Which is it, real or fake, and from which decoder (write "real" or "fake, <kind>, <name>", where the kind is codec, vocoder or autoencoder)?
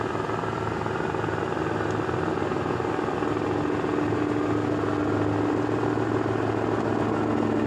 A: real